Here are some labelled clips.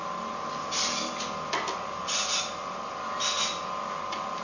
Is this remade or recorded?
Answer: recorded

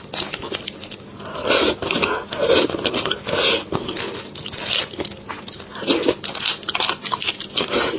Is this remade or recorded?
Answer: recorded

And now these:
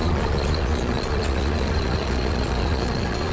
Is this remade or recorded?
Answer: remade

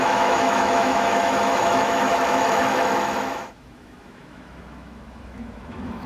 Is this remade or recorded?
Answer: remade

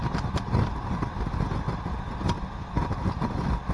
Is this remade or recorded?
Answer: recorded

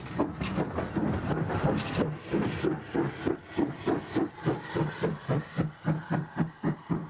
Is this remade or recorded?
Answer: recorded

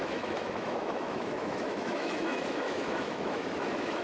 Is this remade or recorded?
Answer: remade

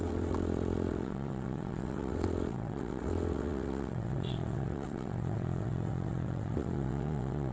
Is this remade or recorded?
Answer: remade